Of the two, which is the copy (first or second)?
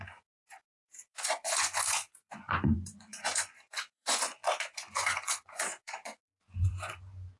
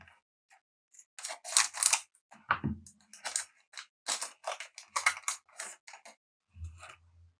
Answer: first